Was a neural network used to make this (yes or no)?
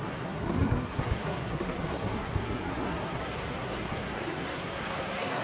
yes